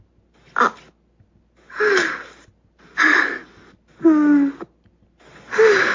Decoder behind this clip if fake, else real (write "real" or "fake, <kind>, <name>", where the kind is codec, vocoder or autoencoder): real